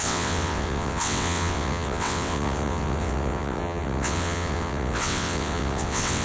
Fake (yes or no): yes